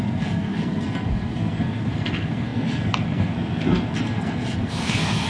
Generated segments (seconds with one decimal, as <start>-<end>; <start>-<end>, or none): 0.0-5.3